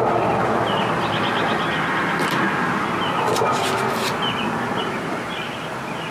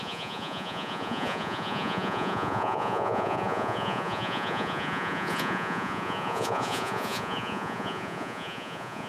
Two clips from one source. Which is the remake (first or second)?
second